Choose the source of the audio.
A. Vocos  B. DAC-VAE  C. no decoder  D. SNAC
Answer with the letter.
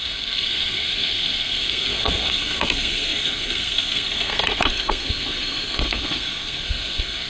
D